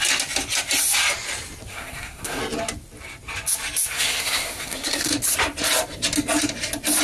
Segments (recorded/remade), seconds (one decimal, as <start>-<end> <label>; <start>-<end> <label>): 0.0-1.7 recorded; 1.7-2.4 remade; 2.4-3.9 recorded; 3.9-5.1 remade; 5.1-7.0 recorded

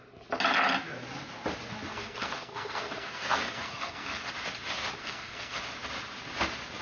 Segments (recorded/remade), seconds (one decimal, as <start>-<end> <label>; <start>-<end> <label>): 0.0-1.9 recorded; 1.9-4.3 remade; 4.3-5.0 recorded; 5.0-5.6 remade; 5.6-6.8 recorded

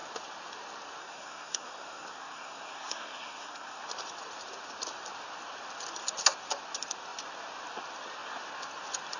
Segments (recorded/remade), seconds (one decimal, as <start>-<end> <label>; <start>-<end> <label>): 0.0-1.0 recorded; 1.0-3.8 remade; 3.8-9.2 recorded

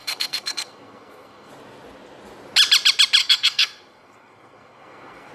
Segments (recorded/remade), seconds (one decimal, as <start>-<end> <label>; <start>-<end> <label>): 0.0-1.5 remade; 1.5-3.2 recorded; 3.2-5.3 remade

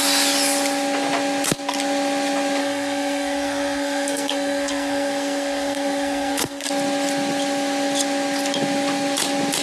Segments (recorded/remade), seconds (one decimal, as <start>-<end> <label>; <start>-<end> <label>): 0.0-2.6 recorded; 2.6-6.7 remade; 6.7-9.6 recorded

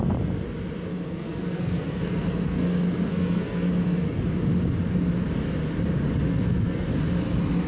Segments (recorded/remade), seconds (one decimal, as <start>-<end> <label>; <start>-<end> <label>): 0.0-0.9 recorded; 0.9-4.2 remade; 4.2-6.3 recorded; 6.3-6.9 remade; 6.9-7.7 recorded

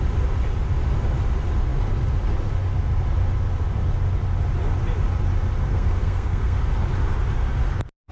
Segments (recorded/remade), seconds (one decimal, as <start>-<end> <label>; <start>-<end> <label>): 0.0-5.7 recorded; 5.7-6.6 remade; 6.6-8.1 recorded